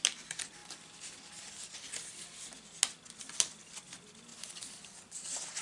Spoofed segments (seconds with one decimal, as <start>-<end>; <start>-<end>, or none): none